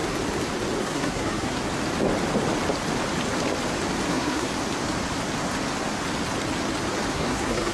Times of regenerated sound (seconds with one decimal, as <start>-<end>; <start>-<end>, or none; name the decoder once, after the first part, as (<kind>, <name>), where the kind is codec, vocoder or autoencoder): 0.8-1.6 (codec, SNAC); 4.1-4.5; 7.1-7.7